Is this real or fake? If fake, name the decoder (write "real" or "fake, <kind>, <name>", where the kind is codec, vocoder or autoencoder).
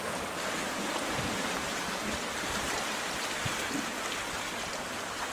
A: real